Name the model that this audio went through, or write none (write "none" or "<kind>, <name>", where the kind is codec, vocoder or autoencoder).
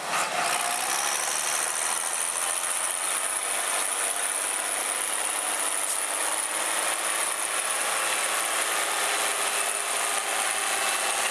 none